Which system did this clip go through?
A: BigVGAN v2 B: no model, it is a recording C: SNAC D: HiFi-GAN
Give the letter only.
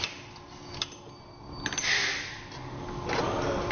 B